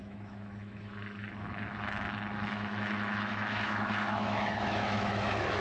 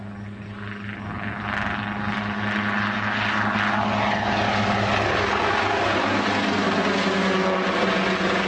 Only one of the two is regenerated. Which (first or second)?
first